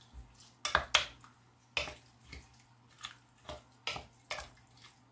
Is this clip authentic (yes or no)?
yes